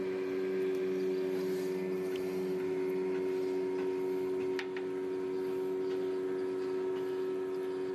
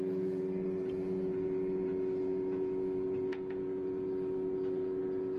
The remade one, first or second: second